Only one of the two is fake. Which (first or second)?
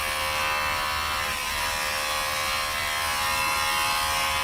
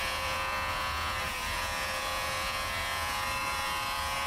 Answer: second